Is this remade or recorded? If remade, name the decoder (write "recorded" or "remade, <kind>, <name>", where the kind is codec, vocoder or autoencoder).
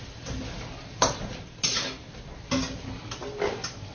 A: recorded